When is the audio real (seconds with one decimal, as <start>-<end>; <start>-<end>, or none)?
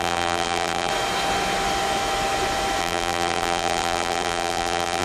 0.9-2.8